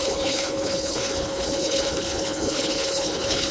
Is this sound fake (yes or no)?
yes